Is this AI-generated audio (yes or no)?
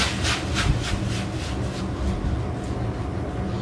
no